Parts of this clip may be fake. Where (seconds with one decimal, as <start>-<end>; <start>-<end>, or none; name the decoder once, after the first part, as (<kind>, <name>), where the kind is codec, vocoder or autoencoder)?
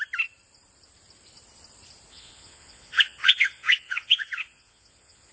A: 2.1-5.3 (vocoder, Vocos)